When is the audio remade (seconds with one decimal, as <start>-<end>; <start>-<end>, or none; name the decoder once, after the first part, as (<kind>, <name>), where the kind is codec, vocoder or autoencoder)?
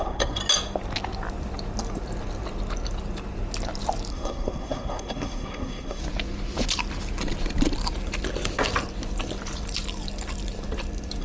0.0-0.4 (codec, SNAC); 4.1-6.0